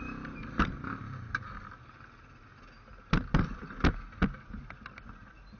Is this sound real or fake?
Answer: real